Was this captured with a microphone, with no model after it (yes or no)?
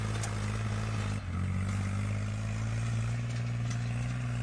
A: yes